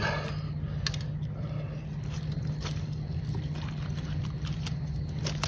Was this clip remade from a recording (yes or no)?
no